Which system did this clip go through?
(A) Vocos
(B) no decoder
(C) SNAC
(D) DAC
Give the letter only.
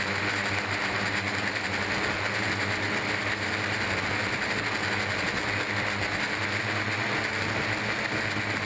B